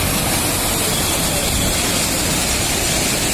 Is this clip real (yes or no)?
yes